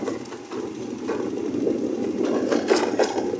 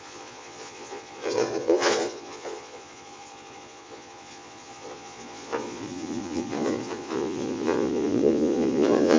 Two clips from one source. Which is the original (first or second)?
first